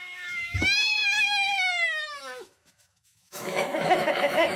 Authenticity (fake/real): fake